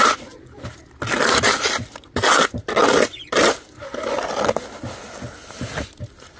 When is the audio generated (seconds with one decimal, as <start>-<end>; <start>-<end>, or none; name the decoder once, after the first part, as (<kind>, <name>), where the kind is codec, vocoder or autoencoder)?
none